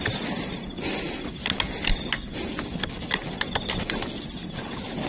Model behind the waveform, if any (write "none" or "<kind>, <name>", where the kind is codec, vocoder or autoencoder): none